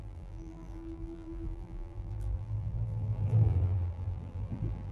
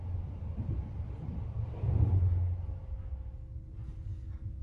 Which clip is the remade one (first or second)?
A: first